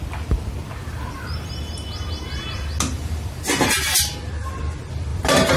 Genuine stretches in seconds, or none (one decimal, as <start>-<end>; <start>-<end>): 0.0-0.8; 1.7-5.1